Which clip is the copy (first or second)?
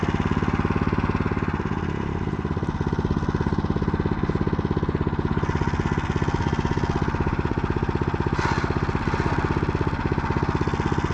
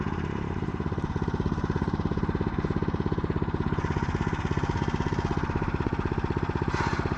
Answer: second